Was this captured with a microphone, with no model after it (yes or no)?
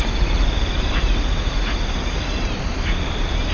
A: no